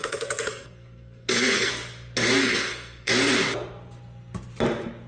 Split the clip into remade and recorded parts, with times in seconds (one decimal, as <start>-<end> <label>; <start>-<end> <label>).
0.0-1.7 remade; 1.7-2.4 recorded; 2.4-3.1 remade; 3.1-5.1 recorded